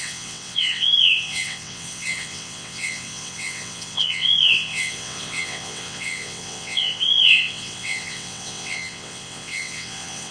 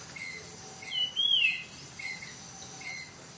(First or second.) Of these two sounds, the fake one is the first